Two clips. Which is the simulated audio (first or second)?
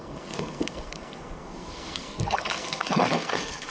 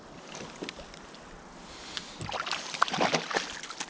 first